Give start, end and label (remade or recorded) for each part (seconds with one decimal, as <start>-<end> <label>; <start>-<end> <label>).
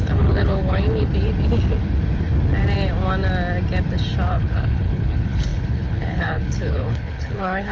0.0-1.1 remade; 1.1-4.3 recorded; 4.3-7.7 remade